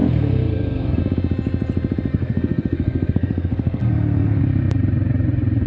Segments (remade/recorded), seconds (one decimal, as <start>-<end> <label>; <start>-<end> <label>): 0.0-1.0 remade; 1.0-2.1 recorded; 2.1-4.4 remade; 4.4-5.7 recorded